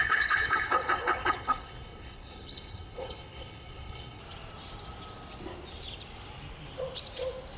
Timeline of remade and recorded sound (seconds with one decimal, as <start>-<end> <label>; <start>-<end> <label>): 0.0-4.2 remade; 4.2-7.6 recorded